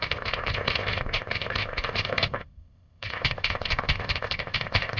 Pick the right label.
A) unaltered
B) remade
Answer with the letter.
B